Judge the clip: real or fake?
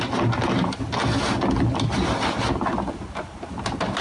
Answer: real